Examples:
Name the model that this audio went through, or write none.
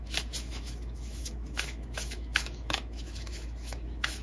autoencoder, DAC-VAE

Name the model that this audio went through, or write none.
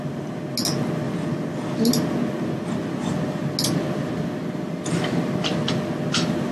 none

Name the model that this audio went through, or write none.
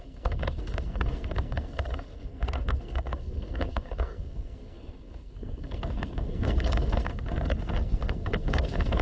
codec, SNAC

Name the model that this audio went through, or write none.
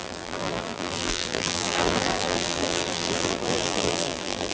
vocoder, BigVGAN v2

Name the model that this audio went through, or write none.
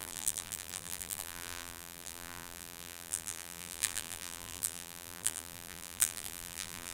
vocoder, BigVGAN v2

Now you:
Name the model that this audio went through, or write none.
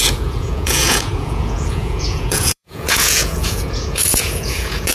vocoder, Vocos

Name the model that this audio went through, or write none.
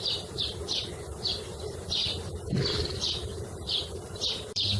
vocoder, BigVGAN v2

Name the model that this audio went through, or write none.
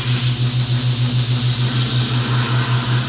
none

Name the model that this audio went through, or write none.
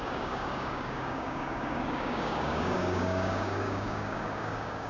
codec, DAC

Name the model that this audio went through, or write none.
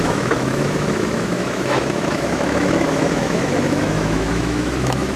autoencoder, DAC-VAE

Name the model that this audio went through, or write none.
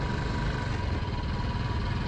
none